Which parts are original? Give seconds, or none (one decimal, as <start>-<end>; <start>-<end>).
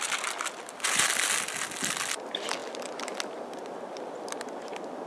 0.0-5.1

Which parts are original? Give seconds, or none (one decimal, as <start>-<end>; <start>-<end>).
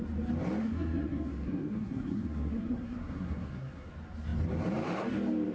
0.0-0.6; 3.9-5.5